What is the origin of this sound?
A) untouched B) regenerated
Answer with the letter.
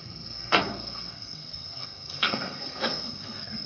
B